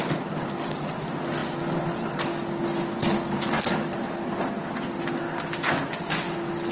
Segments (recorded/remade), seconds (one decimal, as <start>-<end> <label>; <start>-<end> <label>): 0.0-6.7 recorded